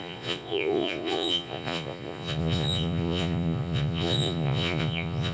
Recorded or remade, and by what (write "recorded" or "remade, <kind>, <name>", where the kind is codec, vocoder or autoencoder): remade, vocoder, Vocos